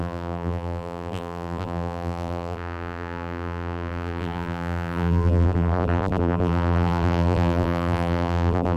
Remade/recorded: remade